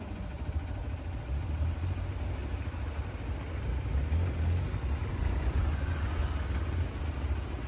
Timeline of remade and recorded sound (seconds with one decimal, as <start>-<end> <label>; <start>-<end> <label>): 0.0-0.8 remade; 0.8-5.1 recorded; 5.1-6.2 remade; 6.2-7.7 recorded